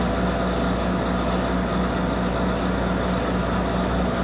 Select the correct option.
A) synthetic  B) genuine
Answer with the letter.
B